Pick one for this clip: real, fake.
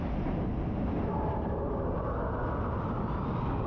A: real